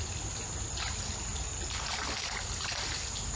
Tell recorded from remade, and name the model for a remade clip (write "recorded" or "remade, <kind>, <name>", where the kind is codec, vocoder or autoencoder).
recorded